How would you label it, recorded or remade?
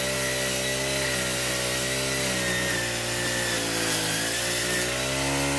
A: recorded